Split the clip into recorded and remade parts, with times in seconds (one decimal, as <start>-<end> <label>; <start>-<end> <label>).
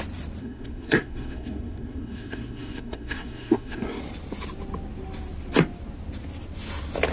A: 0.0-0.4 recorded; 0.4-4.0 remade; 4.0-7.1 recorded